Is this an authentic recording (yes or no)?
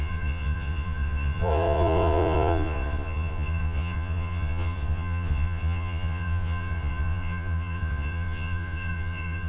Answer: no